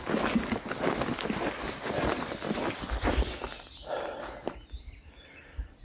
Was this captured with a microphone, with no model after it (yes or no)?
yes